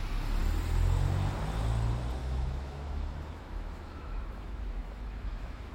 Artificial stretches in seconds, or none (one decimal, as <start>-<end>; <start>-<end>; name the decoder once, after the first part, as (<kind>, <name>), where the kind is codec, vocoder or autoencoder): 2.2-5.7 (autoencoder, DAC-VAE)